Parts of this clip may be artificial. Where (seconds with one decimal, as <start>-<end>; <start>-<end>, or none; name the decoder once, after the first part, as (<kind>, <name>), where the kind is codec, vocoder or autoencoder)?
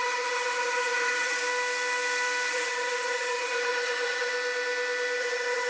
0.0-1.4 (vocoder, HiFi-GAN); 2.5-4.3; 5.2-5.7